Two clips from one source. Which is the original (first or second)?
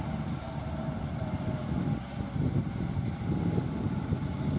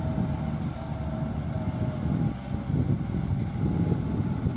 second